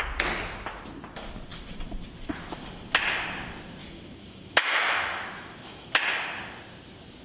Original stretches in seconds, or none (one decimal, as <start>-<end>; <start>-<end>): 0.0-3.8; 5.9-7.2